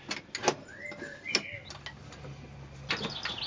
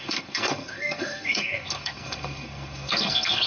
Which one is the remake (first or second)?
second